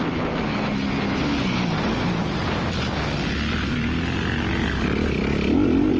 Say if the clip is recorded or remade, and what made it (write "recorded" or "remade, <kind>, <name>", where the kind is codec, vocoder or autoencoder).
recorded